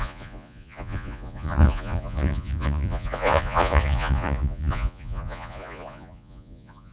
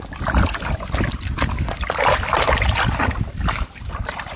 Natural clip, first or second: second